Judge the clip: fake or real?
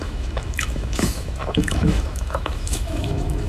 fake